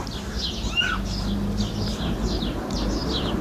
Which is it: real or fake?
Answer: real